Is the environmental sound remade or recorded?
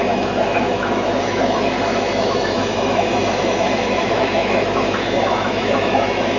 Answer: remade